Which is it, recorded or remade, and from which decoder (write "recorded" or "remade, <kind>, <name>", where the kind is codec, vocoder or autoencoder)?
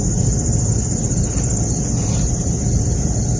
recorded